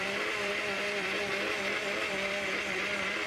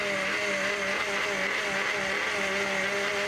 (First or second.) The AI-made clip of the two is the first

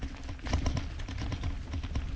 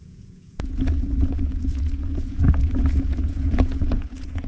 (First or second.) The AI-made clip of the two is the second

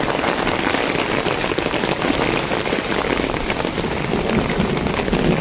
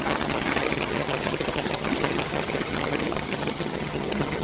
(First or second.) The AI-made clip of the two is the second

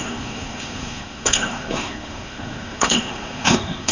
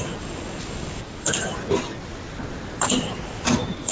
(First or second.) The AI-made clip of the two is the first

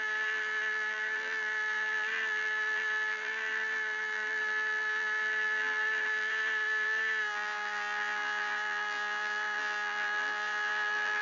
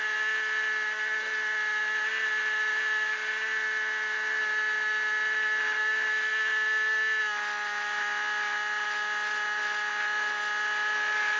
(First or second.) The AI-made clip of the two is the first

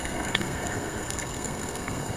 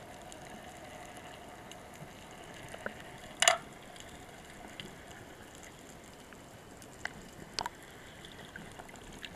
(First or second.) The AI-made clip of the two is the first